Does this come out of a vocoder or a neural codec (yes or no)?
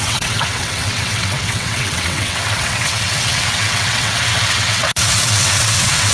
yes